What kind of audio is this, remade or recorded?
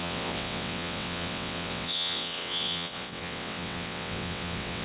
remade